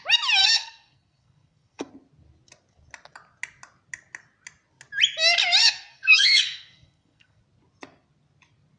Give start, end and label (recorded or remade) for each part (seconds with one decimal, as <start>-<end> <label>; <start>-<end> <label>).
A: 0.0-0.4 recorded; 0.4-1.9 remade; 1.9-5.6 recorded; 5.6-7.4 remade; 7.4-8.8 recorded

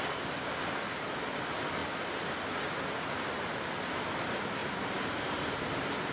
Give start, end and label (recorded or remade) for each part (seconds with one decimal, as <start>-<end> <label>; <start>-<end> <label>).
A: 0.0-4.6 recorded; 4.6-5.6 remade; 5.6-6.1 recorded

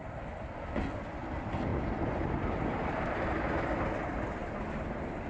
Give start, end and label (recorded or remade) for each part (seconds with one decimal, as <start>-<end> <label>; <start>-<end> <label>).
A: 0.0-1.7 recorded; 1.7-3.2 remade; 3.2-4.4 recorded; 4.4-5.3 remade

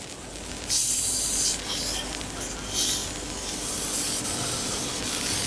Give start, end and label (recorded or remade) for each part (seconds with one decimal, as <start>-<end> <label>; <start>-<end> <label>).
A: 0.0-3.0 recorded; 3.0-5.0 remade; 5.0-5.5 recorded